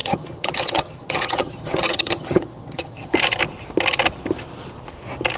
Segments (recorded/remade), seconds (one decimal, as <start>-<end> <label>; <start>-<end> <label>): 0.0-3.2 remade; 3.2-5.4 recorded

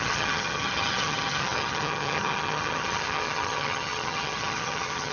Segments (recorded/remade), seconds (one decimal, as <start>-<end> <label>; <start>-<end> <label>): 0.0-5.1 remade

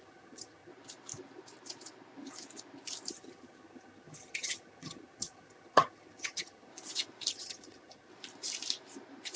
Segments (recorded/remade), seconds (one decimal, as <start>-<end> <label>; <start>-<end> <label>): 0.0-0.7 remade; 0.7-3.1 recorded; 3.1-6.7 remade; 6.7-7.3 recorded; 7.3-8.1 remade; 8.1-9.4 recorded

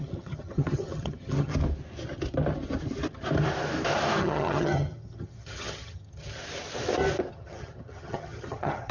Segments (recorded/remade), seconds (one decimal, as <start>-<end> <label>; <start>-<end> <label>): 0.0-1.5 remade; 1.5-4.2 recorded; 4.2-6.4 remade; 6.4-7.3 recorded; 7.3-8.9 remade

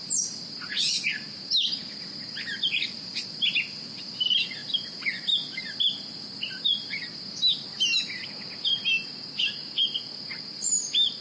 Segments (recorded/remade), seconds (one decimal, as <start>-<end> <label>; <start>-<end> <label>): 0.0-11.2 recorded

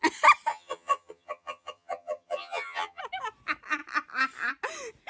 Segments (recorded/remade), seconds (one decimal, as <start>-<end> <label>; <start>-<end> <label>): 0.0-0.5 recorded; 0.5-3.0 remade; 3.0-5.1 recorded

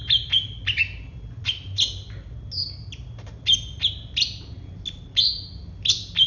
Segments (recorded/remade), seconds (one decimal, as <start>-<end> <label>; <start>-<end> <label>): 0.0-6.3 recorded

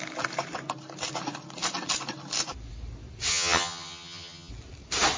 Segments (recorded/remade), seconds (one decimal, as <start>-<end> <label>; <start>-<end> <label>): 0.0-3.3 recorded; 3.3-4.5 remade; 4.5-5.2 recorded